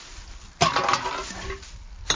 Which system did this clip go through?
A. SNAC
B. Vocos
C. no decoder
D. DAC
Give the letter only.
C